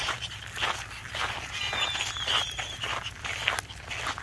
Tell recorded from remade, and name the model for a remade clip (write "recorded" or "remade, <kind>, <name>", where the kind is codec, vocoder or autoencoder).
recorded